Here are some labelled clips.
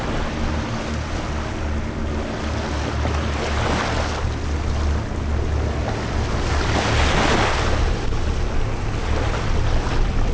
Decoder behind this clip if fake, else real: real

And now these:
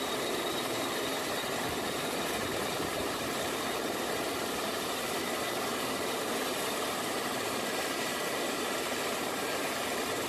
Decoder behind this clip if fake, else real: fake, vocoder, BigVGAN v2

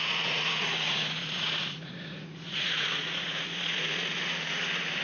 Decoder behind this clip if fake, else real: fake, vocoder, Vocos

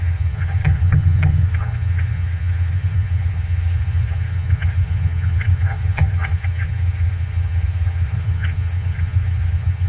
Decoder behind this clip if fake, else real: fake, vocoder, HiFi-GAN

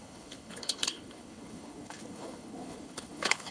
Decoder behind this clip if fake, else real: fake, codec, HILCodec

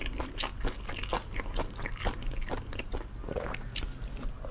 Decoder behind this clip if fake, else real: real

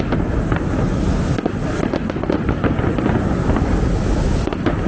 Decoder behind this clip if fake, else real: real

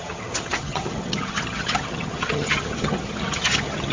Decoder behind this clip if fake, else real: fake, vocoder, HiFi-GAN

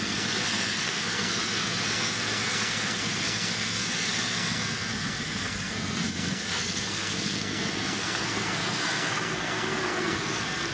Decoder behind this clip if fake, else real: fake, codec, SNAC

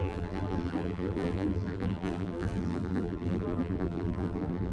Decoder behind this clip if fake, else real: fake, vocoder, BigVGAN v2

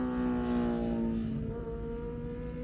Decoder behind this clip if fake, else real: real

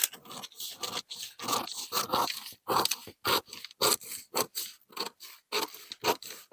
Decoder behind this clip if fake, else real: real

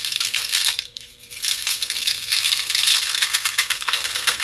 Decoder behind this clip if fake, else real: fake, codec, SNAC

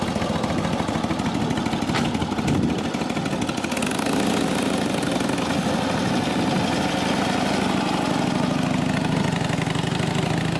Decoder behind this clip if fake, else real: real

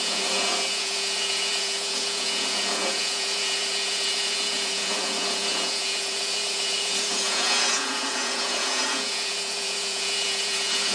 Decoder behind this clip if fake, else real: fake, vocoder, Vocos